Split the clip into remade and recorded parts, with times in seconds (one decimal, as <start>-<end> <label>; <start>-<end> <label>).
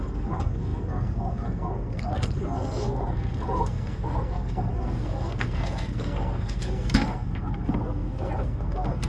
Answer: 0.0-9.1 remade